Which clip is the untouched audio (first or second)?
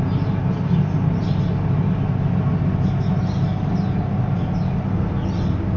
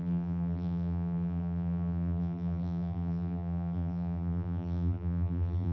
first